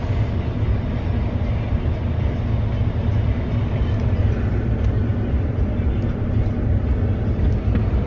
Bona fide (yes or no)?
yes